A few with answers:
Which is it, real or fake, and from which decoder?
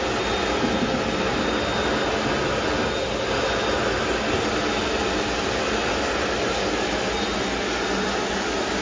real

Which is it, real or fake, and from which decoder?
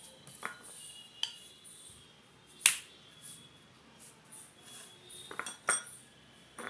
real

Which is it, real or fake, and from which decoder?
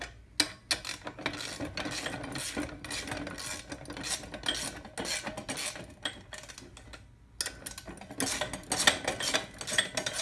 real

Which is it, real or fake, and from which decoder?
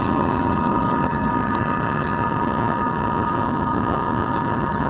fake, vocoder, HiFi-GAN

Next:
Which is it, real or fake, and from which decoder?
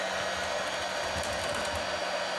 real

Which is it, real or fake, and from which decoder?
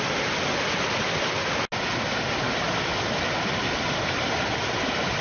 real